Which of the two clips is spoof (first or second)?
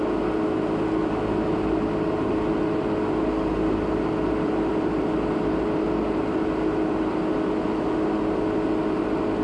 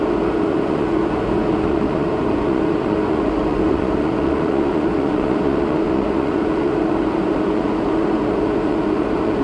second